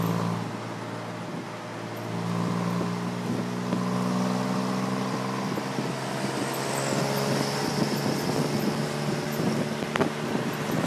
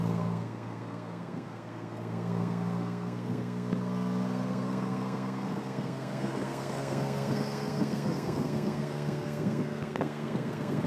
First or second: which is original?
first